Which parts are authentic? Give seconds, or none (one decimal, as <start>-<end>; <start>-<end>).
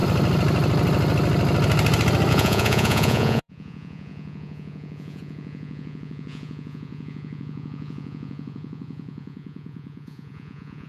0.0-2.3